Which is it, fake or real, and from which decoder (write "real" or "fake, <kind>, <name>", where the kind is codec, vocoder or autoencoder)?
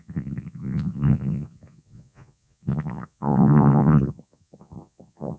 fake, vocoder, Vocos